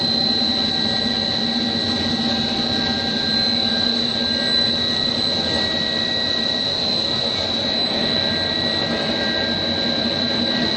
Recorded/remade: recorded